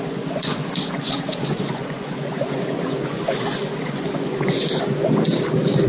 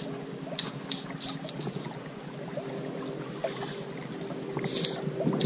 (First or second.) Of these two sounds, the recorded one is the second